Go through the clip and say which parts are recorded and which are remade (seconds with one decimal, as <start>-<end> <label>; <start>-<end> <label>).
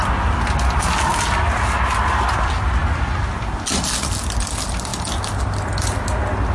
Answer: 0.0-6.5 recorded